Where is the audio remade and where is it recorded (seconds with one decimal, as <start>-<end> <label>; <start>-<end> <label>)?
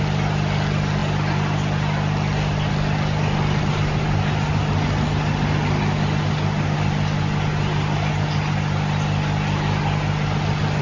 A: 0.0-10.8 recorded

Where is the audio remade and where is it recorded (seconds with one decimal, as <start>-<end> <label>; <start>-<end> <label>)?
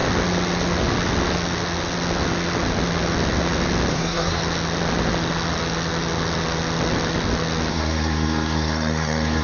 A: 0.0-3.9 recorded; 3.9-4.4 remade; 4.4-7.7 recorded; 7.7-9.4 remade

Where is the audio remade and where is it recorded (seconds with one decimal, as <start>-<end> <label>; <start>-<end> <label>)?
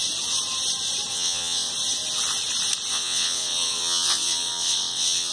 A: 0.0-1.1 recorded; 1.1-1.7 remade; 1.7-2.9 recorded; 2.9-5.3 remade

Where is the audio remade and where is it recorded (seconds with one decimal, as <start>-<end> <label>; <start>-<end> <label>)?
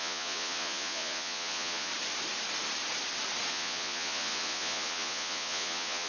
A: 0.0-1.9 remade; 1.9-3.5 recorded; 3.5-6.1 remade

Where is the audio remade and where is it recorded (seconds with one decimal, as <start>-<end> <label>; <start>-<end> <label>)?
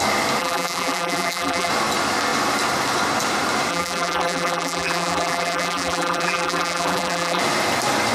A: 0.0-0.4 recorded; 0.4-1.7 remade; 1.7-3.7 recorded; 3.7-7.4 remade; 7.4-8.1 recorded